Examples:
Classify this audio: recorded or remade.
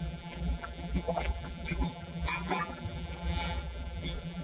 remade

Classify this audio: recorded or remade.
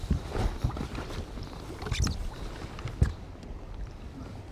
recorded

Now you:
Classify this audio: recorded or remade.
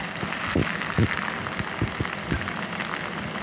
recorded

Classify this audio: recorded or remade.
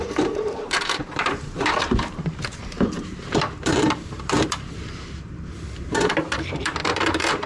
remade